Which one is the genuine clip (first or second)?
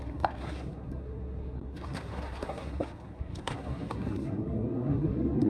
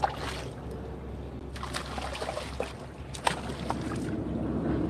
second